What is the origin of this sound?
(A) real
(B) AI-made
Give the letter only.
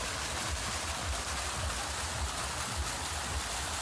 A